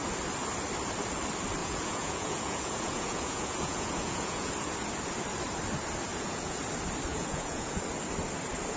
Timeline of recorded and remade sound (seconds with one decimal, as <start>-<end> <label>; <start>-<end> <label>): 0.0-1.6 recorded; 1.6-4.5 remade; 4.5-6.1 recorded; 6.1-6.6 remade; 6.6-7.1 recorded; 7.1-7.8 remade; 7.8-8.8 recorded